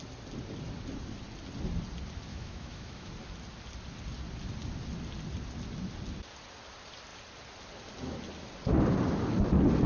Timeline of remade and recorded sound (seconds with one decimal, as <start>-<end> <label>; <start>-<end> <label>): 0.0-2.3 recorded; 2.3-3.1 remade; 3.1-9.9 recorded